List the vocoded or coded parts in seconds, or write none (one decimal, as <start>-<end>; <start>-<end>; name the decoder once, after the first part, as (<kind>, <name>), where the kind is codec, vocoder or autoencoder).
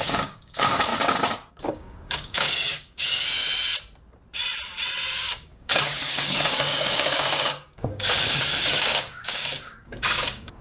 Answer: 0.0-0.9 (codec, DAC); 1.5-3.4; 5.1-10.6